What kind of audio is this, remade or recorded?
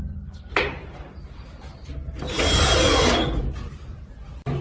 recorded